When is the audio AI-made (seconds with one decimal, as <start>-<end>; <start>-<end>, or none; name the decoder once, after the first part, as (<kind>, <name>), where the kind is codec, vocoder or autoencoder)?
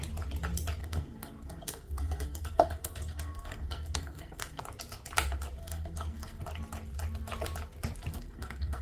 0.8-4.6 (codec, SNAC); 5.6-6.4; 8.1-8.8